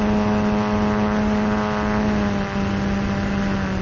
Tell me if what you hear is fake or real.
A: real